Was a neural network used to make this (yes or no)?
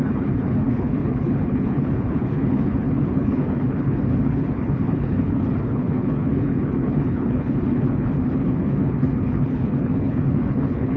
yes